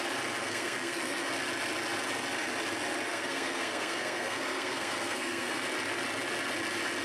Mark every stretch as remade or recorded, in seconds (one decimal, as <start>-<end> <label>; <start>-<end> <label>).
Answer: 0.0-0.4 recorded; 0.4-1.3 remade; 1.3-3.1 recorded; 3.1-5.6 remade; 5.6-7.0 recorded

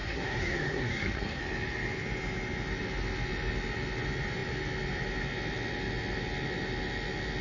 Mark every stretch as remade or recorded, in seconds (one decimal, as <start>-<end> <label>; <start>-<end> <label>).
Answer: 0.0-1.4 remade; 1.4-7.4 recorded

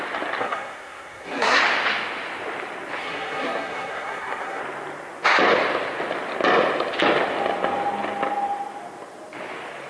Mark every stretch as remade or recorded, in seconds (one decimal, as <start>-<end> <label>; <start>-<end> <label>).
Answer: 0.0-0.4 recorded; 0.4-1.6 remade; 1.6-3.0 recorded; 3.0-4.6 remade; 4.6-9.9 recorded